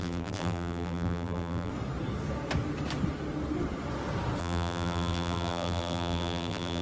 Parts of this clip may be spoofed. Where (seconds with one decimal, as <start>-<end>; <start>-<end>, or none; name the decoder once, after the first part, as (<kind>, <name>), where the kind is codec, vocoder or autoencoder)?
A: 0.0-1.7 (vocoder, BigVGAN v2); 4.4-6.8

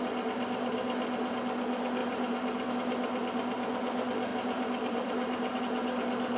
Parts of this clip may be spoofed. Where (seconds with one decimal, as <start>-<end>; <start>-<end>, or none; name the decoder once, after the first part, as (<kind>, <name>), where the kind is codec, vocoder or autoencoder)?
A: 2.0-2.7 (vocoder, BigVGAN v2); 4.3-5.6

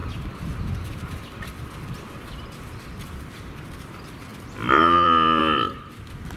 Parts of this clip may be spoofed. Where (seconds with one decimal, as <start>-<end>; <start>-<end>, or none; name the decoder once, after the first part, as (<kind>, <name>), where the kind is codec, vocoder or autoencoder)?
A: 4.3-5.4 (vocoder, BigVGAN v2)

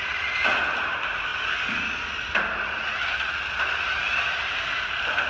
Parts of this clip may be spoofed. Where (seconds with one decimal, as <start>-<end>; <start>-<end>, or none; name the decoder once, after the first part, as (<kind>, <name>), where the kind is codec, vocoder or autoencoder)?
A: none

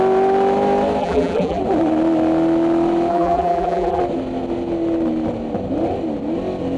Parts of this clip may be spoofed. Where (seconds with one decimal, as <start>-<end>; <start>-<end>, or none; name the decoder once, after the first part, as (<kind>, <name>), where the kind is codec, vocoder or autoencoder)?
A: 1.0-1.6 (vocoder, BigVGAN v2); 3.1-4.0

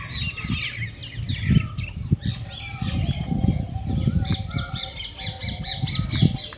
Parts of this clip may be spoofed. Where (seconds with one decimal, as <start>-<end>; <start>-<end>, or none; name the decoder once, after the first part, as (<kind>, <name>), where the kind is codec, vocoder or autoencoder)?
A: none